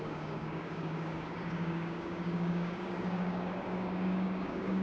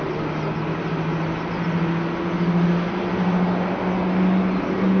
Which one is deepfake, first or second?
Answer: first